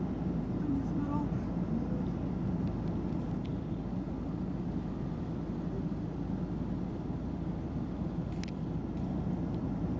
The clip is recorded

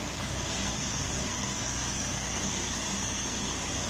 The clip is remade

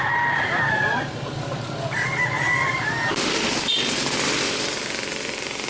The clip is remade